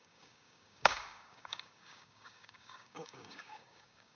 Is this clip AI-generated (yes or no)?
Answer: yes